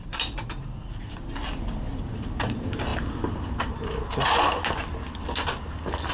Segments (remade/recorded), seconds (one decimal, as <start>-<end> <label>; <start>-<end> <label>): 0.0-6.1 recorded